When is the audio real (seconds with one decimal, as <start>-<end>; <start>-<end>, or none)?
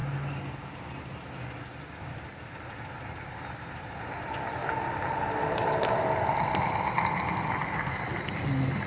0.0-8.9